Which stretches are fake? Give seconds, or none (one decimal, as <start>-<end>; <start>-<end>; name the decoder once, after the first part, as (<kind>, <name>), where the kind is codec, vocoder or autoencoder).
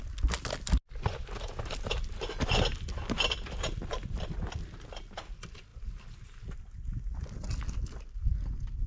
none